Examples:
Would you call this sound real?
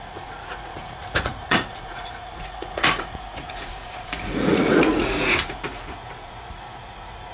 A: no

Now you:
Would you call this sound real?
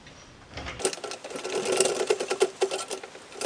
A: yes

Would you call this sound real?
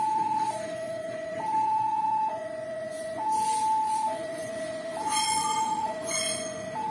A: no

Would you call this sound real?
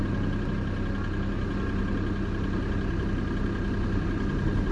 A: yes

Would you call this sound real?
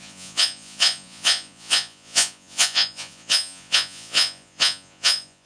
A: no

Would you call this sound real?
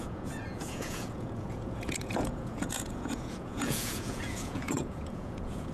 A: no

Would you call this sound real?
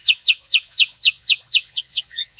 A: no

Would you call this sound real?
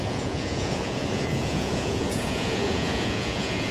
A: no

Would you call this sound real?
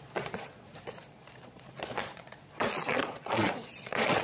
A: no